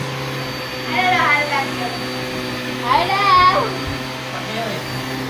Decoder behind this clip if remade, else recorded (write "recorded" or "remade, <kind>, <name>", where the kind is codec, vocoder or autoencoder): recorded